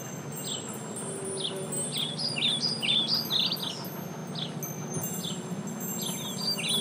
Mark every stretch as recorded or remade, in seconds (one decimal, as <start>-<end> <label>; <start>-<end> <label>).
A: 0.0-6.8 recorded